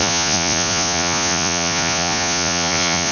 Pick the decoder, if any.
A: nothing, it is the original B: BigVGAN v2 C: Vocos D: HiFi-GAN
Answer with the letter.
C